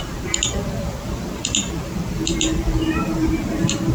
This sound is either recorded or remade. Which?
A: recorded